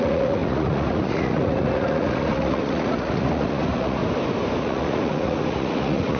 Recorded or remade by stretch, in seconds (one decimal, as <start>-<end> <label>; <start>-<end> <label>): 0.0-4.0 remade; 4.0-4.6 recorded; 4.6-6.2 remade